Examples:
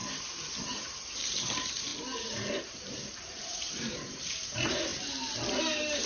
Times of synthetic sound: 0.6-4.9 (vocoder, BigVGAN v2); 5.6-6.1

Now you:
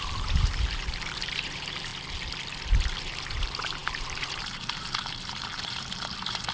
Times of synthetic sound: 0.0-1.9 (vocoder, BigVGAN v2); 3.3-6.5

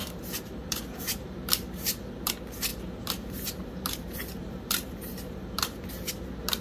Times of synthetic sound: 0.0-2.3 (vocoder, BigVGAN v2); 2.7-6.1

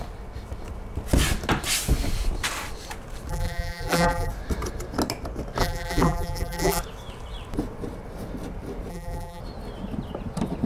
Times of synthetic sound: 3.3-4.3 (vocoder, BigVGAN v2); 5.6-6.8; 8.9-9.4

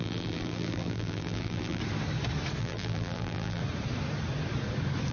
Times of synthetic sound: 0.0-1.8 (vocoder, BigVGAN v2); 2.6-3.6

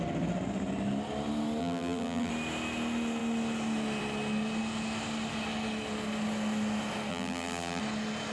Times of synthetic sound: 1.6-2.3 (vocoder, BigVGAN v2); 7.1-7.8